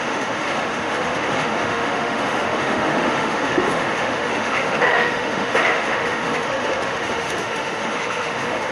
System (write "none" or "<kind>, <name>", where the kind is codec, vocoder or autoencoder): autoencoder, DAC-VAE